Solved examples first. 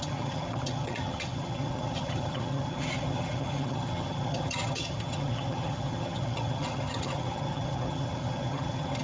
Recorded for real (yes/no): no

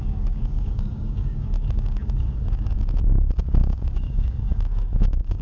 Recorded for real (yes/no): no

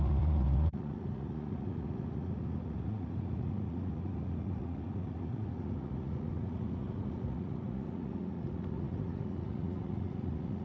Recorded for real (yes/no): no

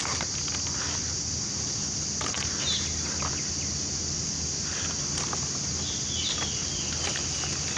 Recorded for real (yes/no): yes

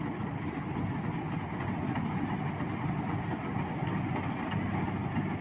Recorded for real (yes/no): yes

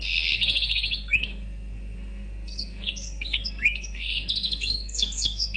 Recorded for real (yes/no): no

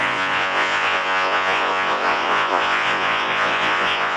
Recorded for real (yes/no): no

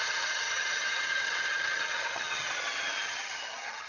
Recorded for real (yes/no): no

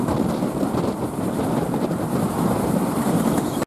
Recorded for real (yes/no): yes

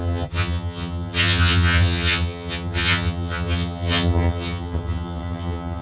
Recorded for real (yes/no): no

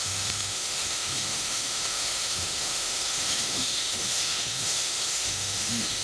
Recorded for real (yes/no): no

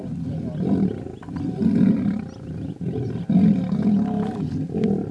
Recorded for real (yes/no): yes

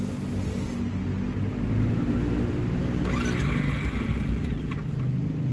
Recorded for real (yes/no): yes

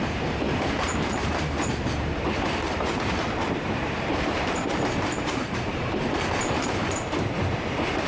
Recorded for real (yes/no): no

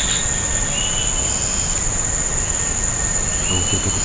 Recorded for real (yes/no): yes